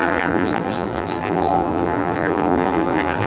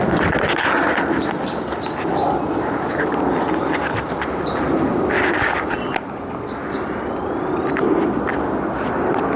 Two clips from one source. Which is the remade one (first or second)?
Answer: first